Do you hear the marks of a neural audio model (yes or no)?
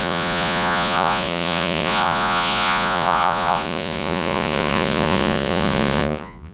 yes